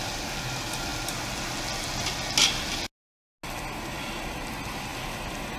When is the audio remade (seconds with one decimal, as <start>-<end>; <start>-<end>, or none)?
none